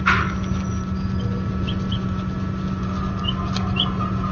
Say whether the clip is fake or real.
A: real